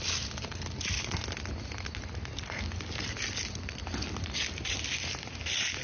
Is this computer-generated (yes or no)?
no